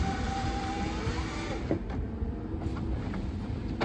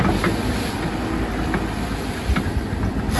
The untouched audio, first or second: second